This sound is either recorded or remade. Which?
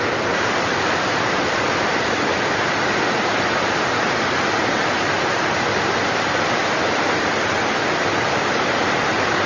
remade